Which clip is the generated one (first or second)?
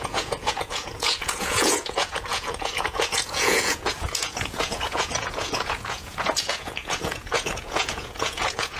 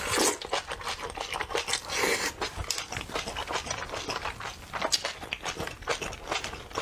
first